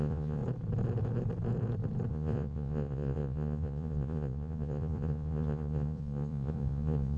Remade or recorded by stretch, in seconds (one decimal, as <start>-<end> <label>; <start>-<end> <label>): 0.0-0.4 remade; 0.4-2.1 recorded; 2.1-7.2 remade